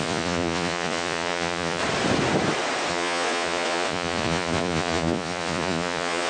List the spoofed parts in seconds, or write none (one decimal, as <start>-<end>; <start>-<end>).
0.0-1.8; 2.9-6.3